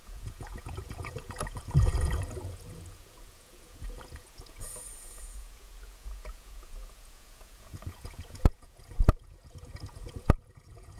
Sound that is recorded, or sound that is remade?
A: remade